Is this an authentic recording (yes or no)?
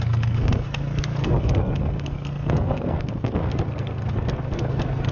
no